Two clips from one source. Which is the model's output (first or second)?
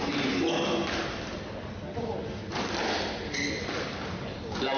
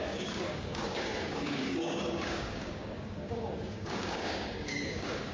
second